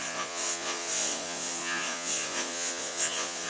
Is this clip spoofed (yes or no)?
yes